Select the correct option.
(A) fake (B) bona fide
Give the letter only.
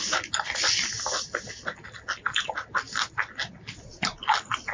B